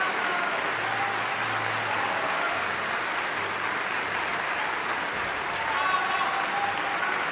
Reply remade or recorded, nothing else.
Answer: recorded